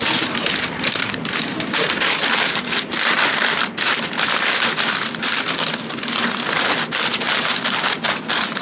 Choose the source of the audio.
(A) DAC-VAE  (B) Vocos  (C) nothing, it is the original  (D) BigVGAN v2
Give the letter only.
C